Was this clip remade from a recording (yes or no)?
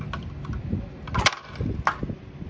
no